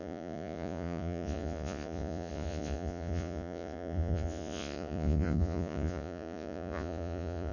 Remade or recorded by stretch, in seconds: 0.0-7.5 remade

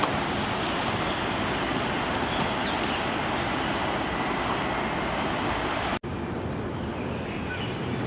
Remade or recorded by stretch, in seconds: 0.0-8.1 recorded

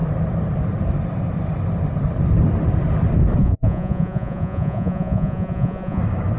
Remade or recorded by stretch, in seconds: 0.0-3.4 recorded; 3.4-6.0 remade; 6.0-6.4 recorded

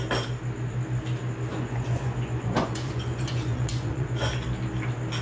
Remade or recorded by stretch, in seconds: 0.0-1.5 recorded; 1.5-4.3 remade; 4.3-5.2 recorded